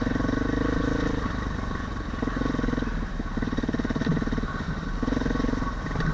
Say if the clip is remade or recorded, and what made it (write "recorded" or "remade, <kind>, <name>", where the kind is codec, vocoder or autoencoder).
recorded